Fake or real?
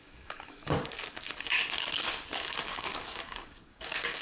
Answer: fake